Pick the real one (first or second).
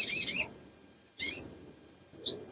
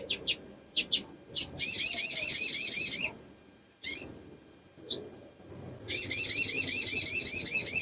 second